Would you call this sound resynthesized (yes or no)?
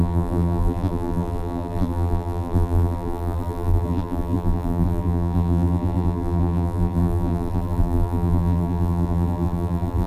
yes